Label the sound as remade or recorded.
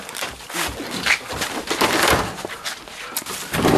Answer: recorded